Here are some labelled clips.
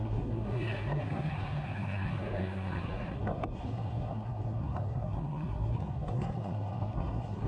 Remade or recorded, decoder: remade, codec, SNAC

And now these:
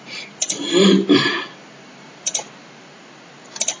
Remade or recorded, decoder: recorded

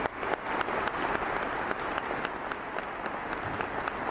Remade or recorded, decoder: recorded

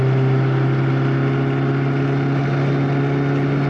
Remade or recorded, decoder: recorded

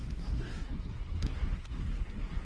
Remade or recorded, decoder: remade, codec, SNAC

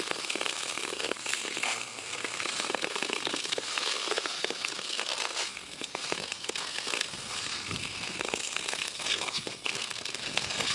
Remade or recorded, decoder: remade, codec, SNAC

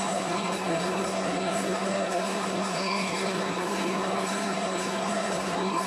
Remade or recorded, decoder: remade, codec, SNAC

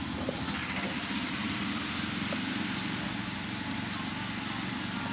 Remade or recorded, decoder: recorded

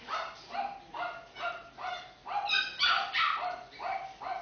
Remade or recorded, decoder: recorded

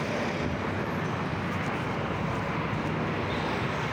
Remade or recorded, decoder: recorded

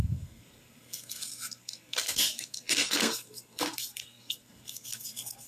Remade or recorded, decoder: remade, codec, SNAC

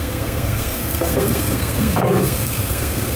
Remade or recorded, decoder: remade, codec, SNAC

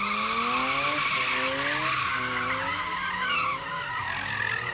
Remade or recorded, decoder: recorded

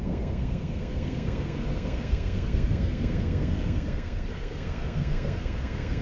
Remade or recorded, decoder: remade, codec, SNAC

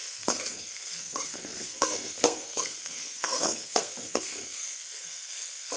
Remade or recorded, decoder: remade, codec, SNAC